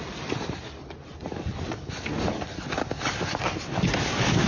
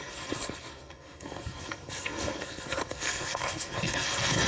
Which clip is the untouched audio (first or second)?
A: first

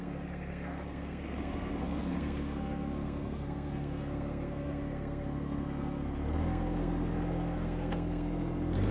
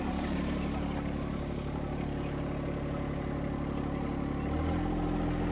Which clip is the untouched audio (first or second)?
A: second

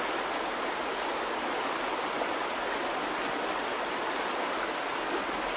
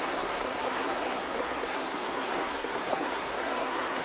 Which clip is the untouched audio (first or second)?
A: first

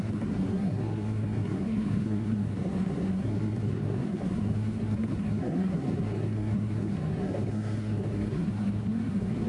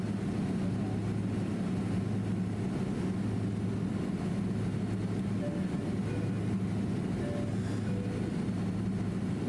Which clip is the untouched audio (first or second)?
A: second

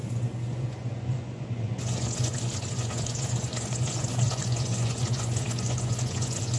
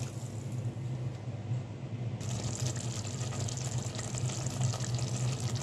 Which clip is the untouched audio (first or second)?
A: second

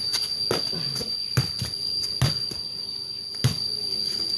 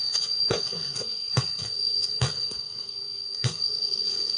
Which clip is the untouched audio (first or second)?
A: first